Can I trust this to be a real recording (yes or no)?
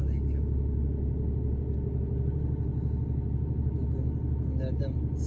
yes